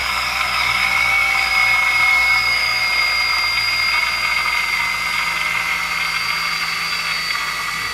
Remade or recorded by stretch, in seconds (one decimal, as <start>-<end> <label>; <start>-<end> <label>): 0.0-1.5 remade; 1.5-2.1 recorded; 2.1-2.8 remade; 2.8-7.9 recorded